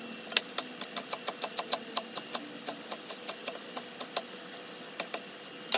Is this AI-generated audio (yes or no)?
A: no